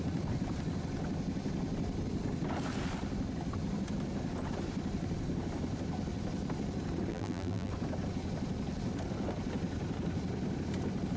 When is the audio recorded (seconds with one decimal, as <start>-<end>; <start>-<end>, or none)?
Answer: 0.0-7.1; 7.7-11.2